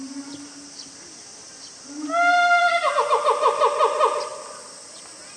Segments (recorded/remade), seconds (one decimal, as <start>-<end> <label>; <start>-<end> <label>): 0.0-5.4 recorded